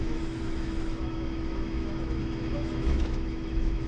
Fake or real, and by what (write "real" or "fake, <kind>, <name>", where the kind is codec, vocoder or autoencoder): fake, autoencoder, DAC-VAE